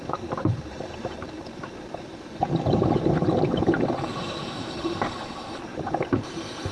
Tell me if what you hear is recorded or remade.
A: remade